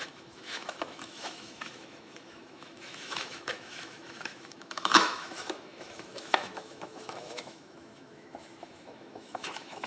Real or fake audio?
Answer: fake